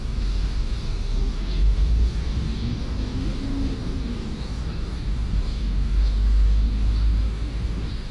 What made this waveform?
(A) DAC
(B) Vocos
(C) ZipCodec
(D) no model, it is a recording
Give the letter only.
A